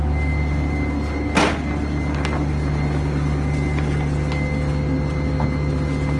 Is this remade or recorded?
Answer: recorded